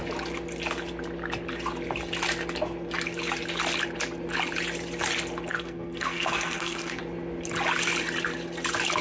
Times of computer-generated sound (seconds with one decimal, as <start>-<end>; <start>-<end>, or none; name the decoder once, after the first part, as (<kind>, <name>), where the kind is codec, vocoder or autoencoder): 5.5-7.0 (codec, SNAC)